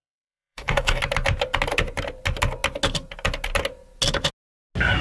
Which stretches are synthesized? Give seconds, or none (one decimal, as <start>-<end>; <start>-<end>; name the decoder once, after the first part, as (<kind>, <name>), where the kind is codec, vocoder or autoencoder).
0.0-1.0 (codec, DAC)